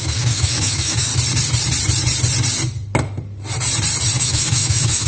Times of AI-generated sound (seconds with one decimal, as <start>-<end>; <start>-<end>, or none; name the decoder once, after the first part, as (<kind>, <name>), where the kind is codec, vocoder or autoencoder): 0.0-1.1 (autoencoder, DAC-VAE); 4.2-5.1